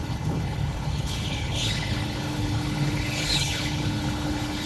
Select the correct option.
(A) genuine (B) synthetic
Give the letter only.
B